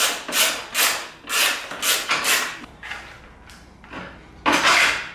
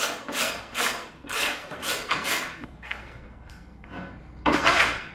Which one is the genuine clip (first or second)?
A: first